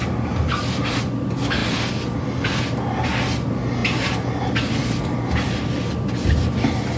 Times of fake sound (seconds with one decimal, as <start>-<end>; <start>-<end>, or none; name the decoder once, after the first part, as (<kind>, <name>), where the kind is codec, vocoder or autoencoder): none